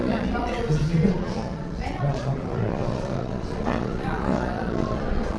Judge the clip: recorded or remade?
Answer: remade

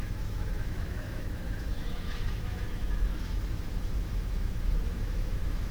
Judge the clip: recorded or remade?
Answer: remade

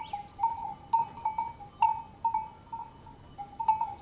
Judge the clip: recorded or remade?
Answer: recorded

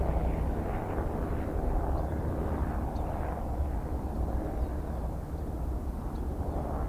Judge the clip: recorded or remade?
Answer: recorded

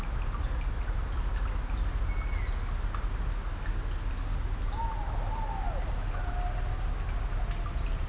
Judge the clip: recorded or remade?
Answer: recorded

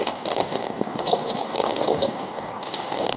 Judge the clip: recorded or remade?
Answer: remade